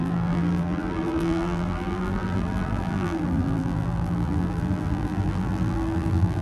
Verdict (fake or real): fake